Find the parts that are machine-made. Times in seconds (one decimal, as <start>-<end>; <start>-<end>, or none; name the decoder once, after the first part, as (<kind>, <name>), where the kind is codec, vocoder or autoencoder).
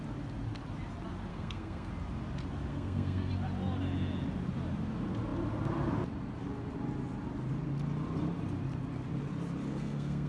1.3-1.9 (codec, SNAC); 2.7-3.3; 9.7-10.3